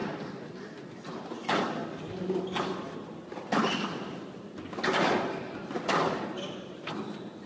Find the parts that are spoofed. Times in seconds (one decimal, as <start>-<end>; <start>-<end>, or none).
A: none